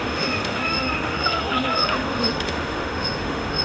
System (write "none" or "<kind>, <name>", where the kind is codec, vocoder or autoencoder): autoencoder, DAC-VAE